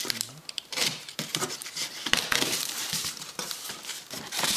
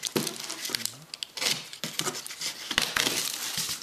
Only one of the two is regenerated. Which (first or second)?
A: first